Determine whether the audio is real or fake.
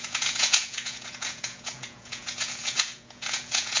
fake